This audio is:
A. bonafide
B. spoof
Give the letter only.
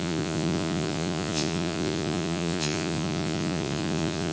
B